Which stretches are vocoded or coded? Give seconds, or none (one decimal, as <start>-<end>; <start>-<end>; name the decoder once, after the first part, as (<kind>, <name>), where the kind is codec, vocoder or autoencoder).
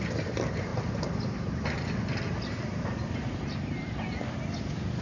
none